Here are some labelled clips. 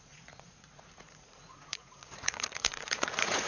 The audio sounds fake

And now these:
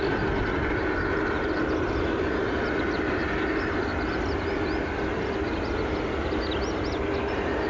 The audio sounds real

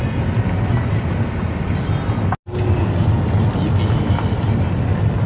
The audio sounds real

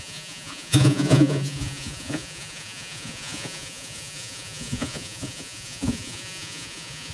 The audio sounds fake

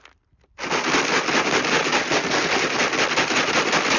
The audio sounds real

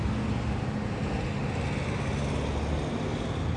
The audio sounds real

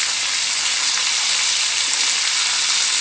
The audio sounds real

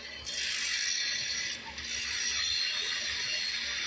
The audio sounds real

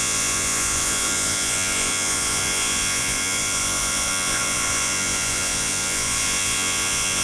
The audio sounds fake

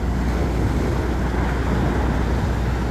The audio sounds real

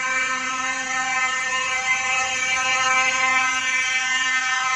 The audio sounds fake